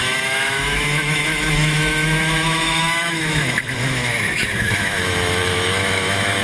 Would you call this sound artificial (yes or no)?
yes